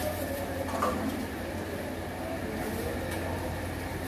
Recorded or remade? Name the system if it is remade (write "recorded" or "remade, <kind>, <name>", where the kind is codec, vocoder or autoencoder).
recorded